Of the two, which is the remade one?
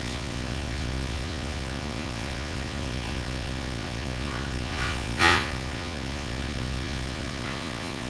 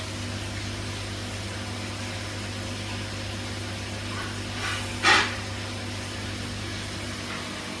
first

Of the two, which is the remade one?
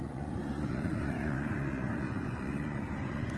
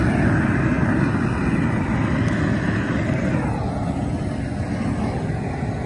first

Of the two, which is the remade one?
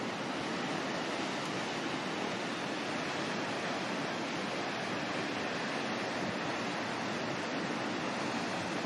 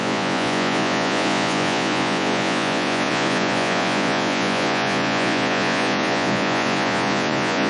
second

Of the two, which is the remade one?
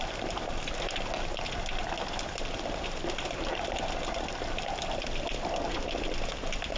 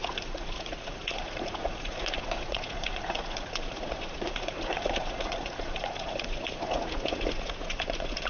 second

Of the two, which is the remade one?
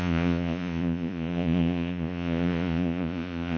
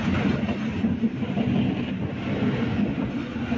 first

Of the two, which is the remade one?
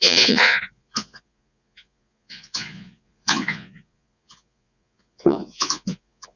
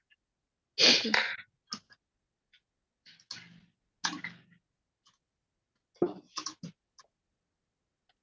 first